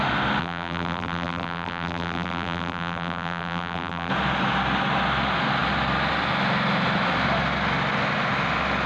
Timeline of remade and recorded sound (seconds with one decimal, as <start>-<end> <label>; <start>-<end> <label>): 0.0-0.4 recorded; 0.4-4.1 remade; 4.1-8.9 recorded